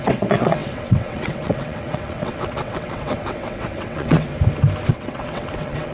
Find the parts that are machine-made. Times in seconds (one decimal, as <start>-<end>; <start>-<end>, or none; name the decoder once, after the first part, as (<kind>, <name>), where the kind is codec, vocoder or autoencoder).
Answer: 0.0-4.3 (vocoder, WaveNeXt); 4.9-5.9